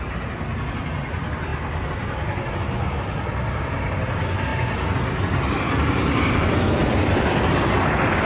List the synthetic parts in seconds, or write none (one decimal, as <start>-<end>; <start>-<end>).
none